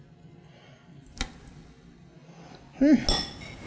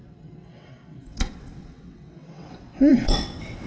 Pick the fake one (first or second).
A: second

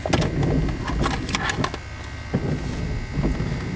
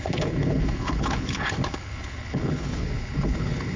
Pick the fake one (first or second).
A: second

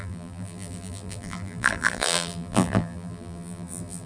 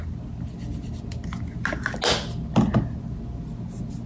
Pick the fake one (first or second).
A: first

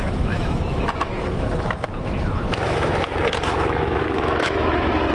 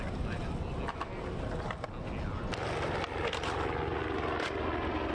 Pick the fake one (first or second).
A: first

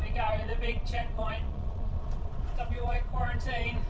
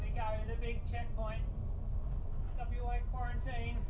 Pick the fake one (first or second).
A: first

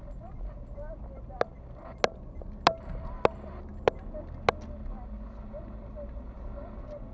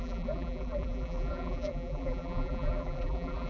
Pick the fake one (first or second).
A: second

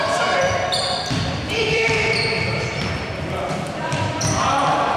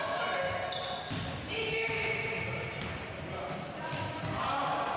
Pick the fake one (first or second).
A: first